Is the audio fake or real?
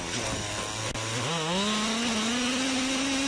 real